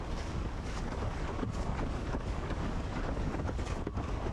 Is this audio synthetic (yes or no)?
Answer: yes